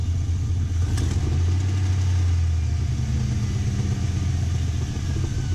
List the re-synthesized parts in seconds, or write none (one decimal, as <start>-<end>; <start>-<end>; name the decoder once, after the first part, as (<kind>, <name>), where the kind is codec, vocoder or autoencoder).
none